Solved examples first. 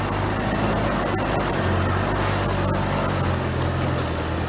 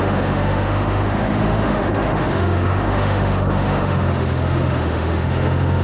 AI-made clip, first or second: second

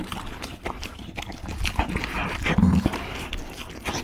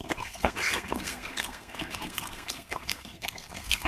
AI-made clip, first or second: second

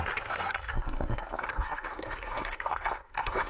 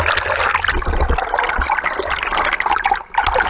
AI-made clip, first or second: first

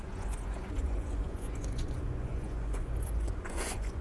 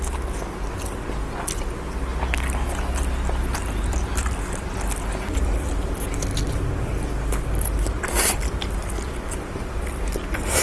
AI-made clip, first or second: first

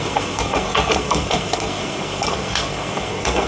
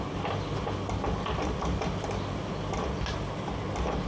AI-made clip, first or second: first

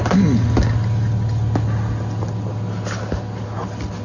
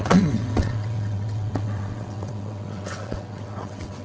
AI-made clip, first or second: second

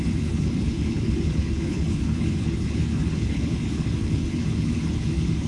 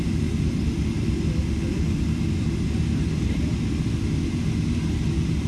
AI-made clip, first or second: first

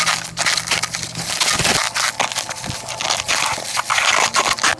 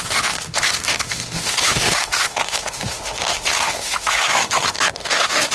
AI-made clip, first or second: second